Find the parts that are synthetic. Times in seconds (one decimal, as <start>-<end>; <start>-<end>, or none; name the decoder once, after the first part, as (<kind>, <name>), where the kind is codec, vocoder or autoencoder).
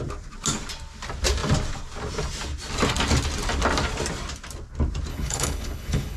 5.1-6.2 (codec, HILCodec)